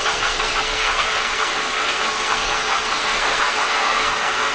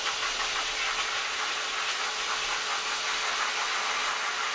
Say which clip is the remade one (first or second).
first